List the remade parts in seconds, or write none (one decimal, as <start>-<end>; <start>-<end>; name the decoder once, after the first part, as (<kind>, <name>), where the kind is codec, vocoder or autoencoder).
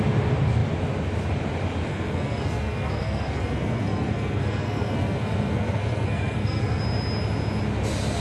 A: 1.9-6.8 (codec, SNAC)